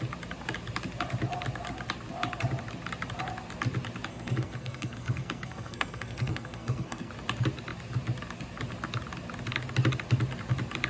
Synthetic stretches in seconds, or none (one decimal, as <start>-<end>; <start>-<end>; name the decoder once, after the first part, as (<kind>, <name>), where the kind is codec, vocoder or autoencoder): 4.1-7.1 (codec, SNAC)